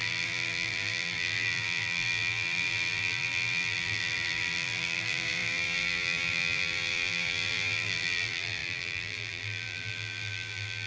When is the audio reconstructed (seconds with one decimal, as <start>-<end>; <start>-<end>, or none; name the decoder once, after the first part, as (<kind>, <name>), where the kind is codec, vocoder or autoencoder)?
0.0-10.9 (vocoder, BigVGAN v2)